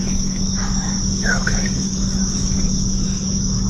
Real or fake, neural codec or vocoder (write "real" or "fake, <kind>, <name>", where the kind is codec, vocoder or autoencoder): fake, codec, DAC